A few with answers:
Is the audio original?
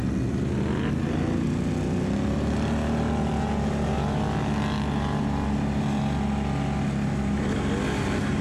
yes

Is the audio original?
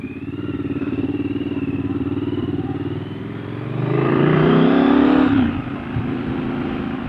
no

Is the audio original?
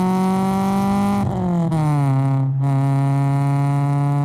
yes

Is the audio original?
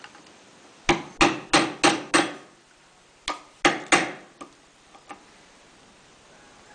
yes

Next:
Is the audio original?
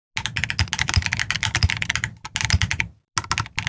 yes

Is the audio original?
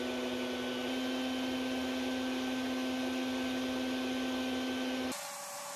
yes